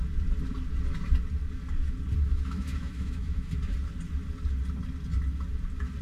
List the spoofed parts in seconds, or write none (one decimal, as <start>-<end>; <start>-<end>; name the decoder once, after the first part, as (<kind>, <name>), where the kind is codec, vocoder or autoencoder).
2.2-3.5 (autoencoder, DAC-VAE)